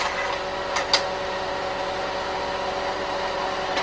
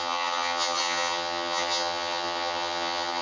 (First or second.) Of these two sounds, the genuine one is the first